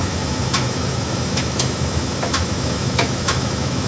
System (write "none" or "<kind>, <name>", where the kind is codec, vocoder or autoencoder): autoencoder, DAC-VAE